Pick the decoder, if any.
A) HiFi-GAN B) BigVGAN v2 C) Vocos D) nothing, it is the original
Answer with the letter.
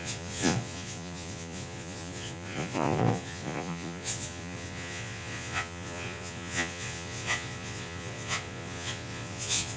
C